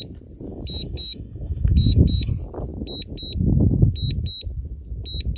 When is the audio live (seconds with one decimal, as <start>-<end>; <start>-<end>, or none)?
0.0-0.5; 2.3-5.4